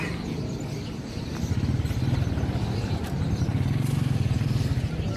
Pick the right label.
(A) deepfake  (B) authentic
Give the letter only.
B